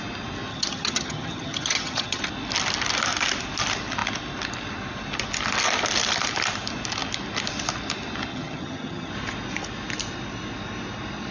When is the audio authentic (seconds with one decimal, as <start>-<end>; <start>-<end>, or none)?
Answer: 0.0-0.5; 2.2-8.3; 9.1-11.3